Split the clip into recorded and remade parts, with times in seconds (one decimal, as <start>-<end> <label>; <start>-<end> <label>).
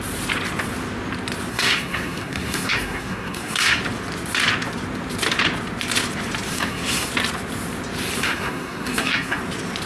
0.0-1.5 recorded; 1.5-3.8 remade; 3.8-6.5 recorded; 6.5-7.1 remade; 7.1-8.2 recorded; 8.2-9.4 remade; 9.4-9.9 recorded